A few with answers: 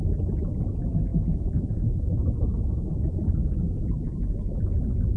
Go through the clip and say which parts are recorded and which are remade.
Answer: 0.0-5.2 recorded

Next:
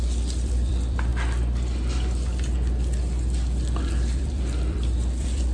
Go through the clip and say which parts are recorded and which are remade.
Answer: 0.0-1.1 remade; 1.1-3.9 recorded; 3.9-5.5 remade